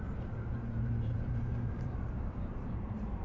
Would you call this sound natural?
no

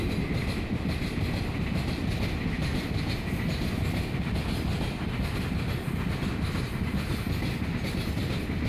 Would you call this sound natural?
yes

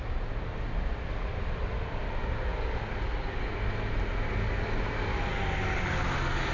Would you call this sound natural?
yes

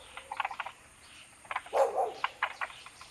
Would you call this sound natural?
no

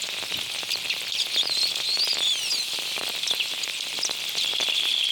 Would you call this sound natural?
yes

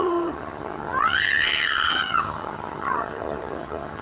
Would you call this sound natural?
no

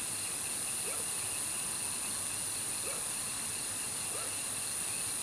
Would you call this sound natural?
yes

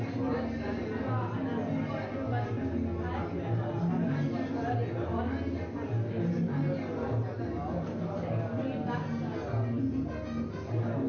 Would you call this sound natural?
yes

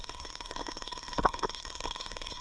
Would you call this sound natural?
no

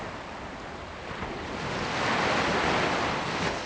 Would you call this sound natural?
yes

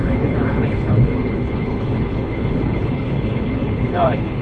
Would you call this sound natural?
no